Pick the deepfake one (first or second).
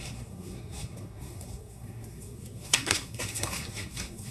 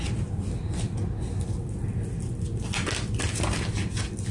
first